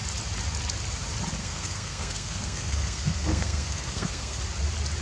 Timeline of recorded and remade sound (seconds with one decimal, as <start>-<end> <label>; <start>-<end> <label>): 0.0-1.4 recorded; 1.4-4.4 remade; 4.4-5.0 recorded